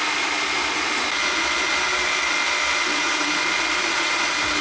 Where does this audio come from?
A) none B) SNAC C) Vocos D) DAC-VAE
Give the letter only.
A